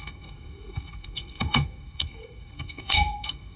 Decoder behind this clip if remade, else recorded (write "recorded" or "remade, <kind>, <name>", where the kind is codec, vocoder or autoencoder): remade, codec, SNAC